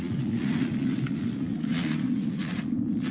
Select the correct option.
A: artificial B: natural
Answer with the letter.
A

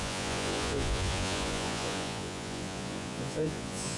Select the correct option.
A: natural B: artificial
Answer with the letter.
B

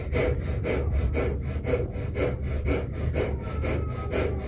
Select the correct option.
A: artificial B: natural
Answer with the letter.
B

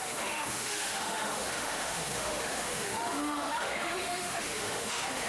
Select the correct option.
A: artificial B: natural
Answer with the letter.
A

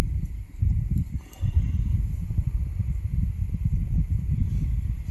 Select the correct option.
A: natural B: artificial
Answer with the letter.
A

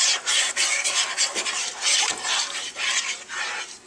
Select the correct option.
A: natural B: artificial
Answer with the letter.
A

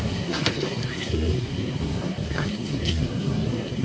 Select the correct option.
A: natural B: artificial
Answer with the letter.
B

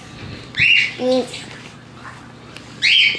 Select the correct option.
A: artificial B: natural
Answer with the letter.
B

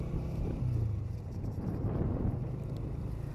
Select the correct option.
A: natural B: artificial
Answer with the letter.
A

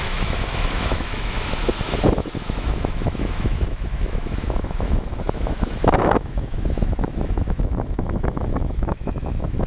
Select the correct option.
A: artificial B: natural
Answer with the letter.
A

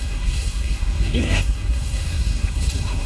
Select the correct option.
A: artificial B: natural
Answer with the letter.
A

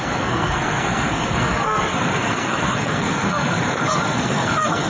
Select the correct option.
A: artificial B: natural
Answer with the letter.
A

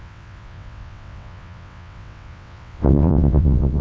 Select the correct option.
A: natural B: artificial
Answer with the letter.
B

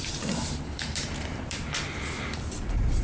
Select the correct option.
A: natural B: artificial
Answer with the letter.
B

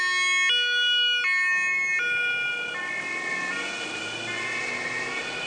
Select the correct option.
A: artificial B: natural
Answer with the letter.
B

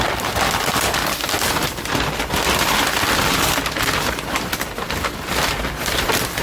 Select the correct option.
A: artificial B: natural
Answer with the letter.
B